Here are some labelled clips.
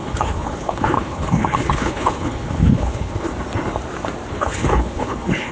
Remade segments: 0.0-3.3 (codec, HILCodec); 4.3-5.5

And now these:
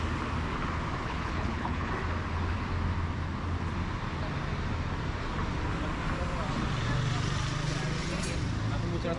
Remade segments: 1.0-1.9 (codec, HILCodec)

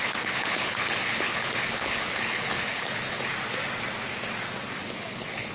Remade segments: 0.0-3.3 (codec, HILCodec); 4.8-5.5

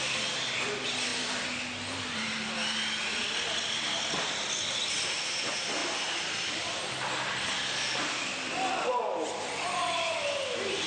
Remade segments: none